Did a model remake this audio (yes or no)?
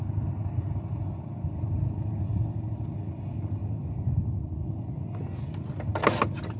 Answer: no